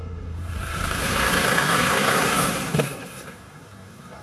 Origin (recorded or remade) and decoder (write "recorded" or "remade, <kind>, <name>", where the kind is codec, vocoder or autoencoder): remade, codec, SNAC